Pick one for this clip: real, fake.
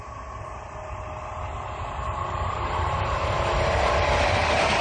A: real